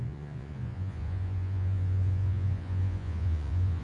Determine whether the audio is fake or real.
fake